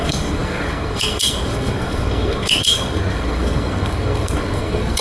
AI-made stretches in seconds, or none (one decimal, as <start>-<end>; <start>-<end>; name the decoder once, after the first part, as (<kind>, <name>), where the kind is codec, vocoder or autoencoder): 0.0-5.0 (codec, SNAC)